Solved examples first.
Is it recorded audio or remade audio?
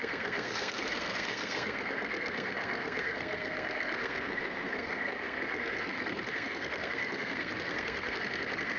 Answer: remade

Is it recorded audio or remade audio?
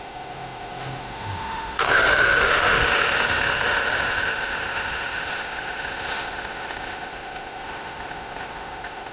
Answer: remade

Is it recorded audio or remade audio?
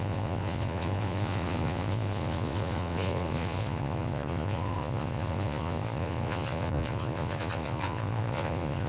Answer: remade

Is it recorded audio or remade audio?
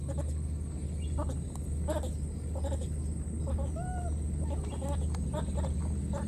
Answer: recorded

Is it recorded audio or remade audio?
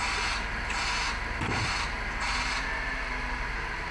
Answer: recorded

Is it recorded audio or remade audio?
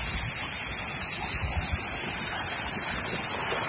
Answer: recorded